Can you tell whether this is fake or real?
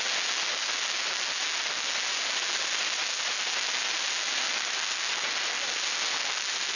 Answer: real